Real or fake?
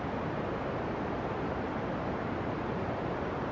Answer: real